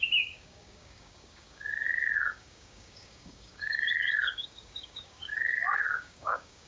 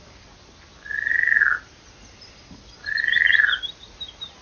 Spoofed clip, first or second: first